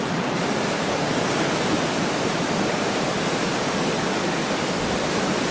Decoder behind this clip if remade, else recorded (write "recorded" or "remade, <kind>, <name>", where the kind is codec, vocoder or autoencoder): recorded